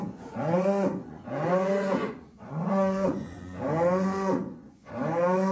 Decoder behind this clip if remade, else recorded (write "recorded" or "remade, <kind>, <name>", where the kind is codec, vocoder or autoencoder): remade, vocoder, Vocos